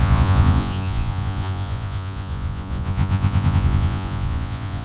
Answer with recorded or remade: remade